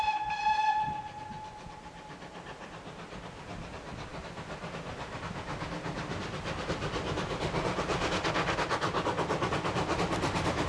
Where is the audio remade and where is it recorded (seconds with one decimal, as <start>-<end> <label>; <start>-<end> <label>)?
0.0-10.7 recorded